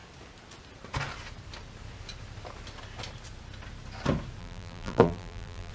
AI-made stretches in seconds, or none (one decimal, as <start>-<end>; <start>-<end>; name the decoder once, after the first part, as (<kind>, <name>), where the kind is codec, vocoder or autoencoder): 4.4-5.7 (vocoder, BigVGAN v2)